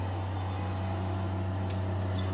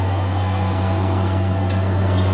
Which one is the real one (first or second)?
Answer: first